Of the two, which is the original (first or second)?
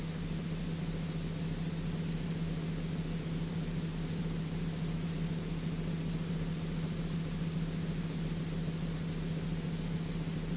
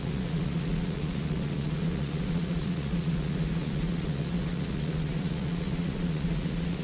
first